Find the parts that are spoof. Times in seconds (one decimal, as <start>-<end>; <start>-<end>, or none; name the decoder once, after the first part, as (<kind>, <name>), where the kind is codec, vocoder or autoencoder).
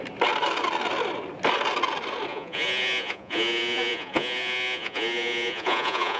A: 2.3-6.2 (vocoder, Vocos)